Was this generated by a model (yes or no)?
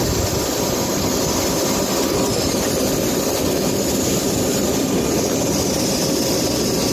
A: no